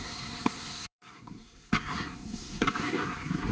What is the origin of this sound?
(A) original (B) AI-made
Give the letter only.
B